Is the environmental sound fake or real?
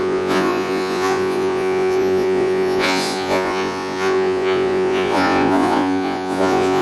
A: fake